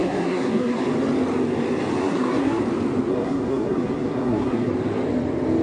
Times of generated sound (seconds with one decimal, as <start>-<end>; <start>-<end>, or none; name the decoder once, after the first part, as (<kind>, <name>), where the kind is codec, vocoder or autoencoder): 0.0-0.8 (codec, SNAC); 2.0-2.6; 3.1-4.7